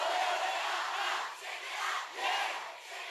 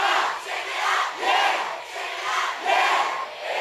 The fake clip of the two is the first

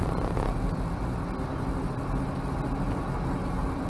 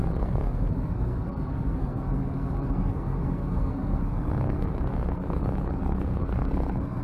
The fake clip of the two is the second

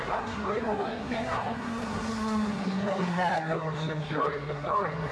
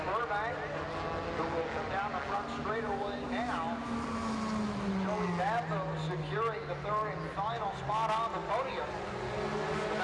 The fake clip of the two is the first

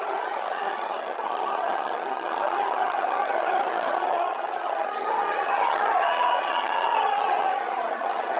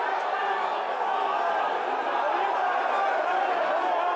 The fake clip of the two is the first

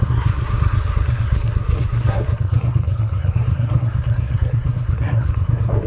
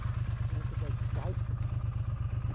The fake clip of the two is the first